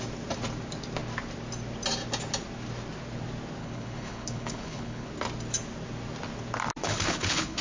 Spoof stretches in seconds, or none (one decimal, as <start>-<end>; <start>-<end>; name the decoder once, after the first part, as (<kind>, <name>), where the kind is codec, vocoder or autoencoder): 3.6-5.1 (codec, HILCodec); 6.8-7.6